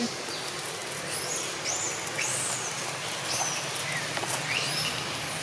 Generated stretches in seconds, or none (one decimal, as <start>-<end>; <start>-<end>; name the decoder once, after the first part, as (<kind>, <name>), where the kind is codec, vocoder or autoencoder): none